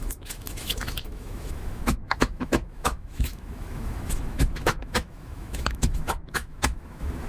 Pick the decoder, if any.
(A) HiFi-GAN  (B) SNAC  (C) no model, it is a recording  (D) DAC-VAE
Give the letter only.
D